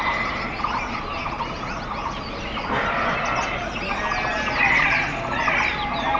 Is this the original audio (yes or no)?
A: yes